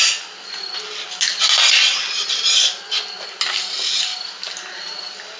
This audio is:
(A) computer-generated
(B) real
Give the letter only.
B